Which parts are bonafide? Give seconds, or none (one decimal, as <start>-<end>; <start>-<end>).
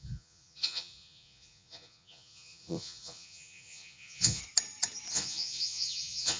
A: 4.4-5.1